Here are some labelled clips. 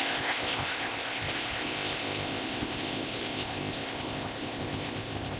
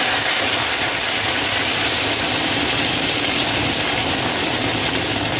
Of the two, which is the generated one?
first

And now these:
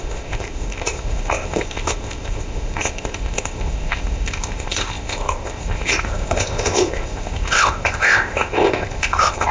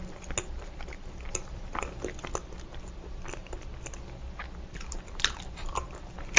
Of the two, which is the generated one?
first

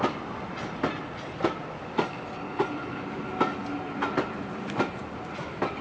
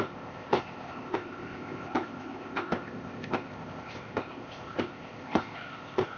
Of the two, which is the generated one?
second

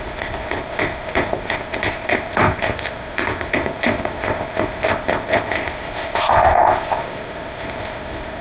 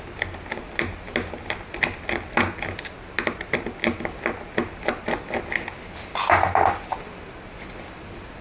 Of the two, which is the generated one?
first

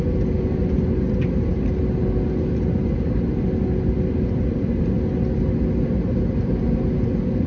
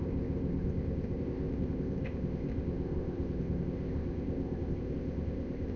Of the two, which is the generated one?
second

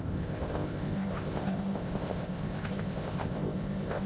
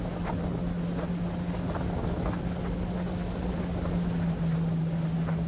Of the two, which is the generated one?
first